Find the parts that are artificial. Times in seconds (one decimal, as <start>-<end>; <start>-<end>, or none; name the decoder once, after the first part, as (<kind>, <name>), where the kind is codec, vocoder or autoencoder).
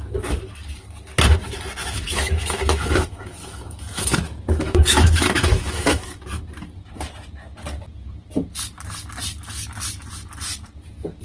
1.8-6.4 (autoencoder, DAC-VAE)